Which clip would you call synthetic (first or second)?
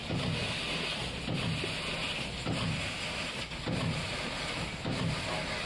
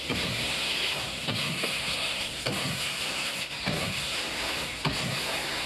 second